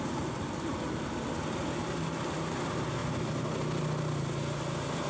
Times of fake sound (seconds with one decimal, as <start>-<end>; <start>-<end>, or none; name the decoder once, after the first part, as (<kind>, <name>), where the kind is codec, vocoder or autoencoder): none